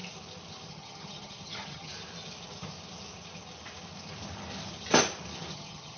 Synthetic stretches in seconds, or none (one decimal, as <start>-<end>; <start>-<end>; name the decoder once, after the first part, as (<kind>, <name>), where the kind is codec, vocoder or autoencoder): 0.7-1.9 (vocoder, HiFi-GAN); 5.5-6.0